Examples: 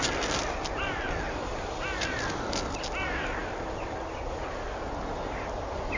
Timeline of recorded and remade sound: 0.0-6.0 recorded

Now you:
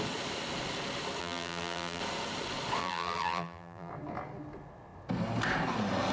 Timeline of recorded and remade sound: 0.0-1.2 recorded; 1.2-2.0 remade; 2.0-2.8 recorded; 2.8-3.9 remade; 3.9-6.1 recorded

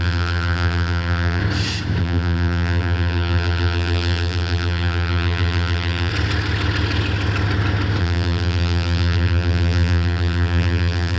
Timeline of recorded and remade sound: 0.0-1.4 remade; 1.4-2.0 recorded; 2.0-6.1 remade; 6.1-8.0 recorded; 8.0-11.2 remade

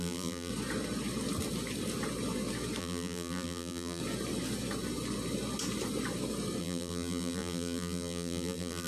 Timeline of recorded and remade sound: 0.0-0.5 remade; 0.5-2.8 recorded; 2.8-4.0 remade; 4.0-6.6 recorded; 6.6-8.9 remade